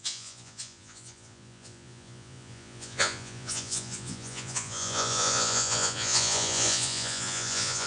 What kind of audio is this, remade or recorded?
remade